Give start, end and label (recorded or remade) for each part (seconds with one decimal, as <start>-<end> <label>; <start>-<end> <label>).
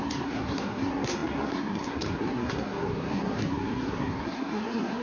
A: 0.0-5.0 remade